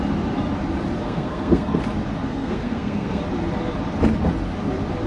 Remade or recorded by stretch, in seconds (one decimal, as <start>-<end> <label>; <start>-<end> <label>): 0.0-1.0 recorded; 1.0-1.8 remade; 1.8-2.3 recorded; 2.3-3.2 remade; 3.2-5.1 recorded